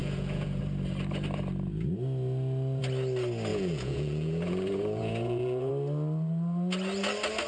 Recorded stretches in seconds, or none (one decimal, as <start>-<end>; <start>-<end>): 0.6-3.5; 5.7-7.5